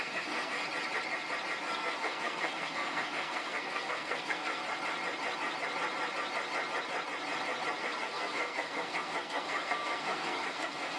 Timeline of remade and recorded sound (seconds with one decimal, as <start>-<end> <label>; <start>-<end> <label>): 0.0-0.6 remade; 0.6-1.6 recorded; 1.6-4.6 remade; 4.6-7.8 recorded; 7.8-11.0 remade